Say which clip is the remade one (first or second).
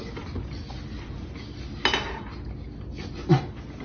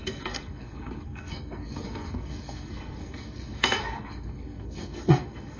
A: second